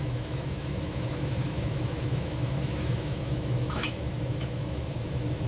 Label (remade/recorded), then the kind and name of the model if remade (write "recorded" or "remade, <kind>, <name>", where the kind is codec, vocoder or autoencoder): remade, autoencoder, DAC-VAE